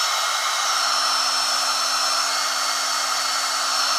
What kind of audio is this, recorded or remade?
recorded